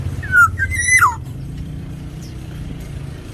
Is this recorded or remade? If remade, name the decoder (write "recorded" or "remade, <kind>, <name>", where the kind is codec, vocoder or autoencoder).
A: remade, vocoder, BigVGAN v2